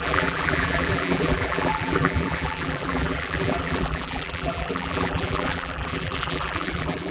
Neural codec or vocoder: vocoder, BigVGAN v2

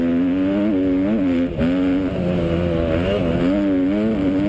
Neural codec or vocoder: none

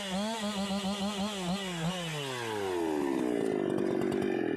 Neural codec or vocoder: none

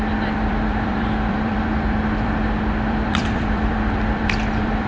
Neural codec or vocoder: vocoder, BigVGAN v2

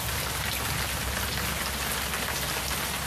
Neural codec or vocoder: none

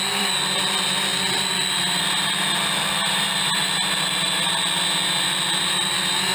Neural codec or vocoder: vocoder, BigVGAN v2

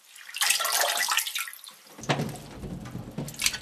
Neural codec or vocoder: none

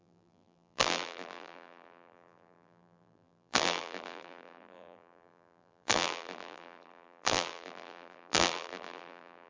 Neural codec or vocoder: vocoder, BigVGAN v2